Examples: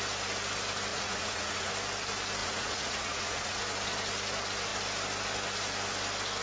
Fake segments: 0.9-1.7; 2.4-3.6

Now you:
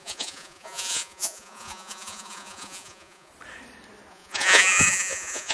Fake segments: 0.0-3.3; 4.1-5.5

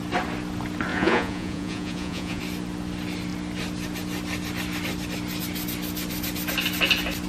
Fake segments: 0.9-2.4

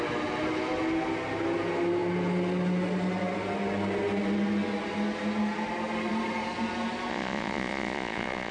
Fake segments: 7.1-8.5

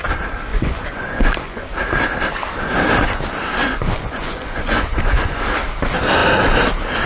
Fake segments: 0.5-1.7; 3.6-5.4

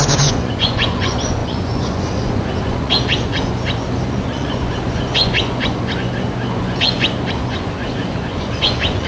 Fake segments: 0.0-9.1

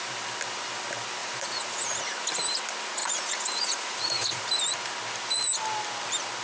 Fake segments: 1.2-2.0; 3.0-4.4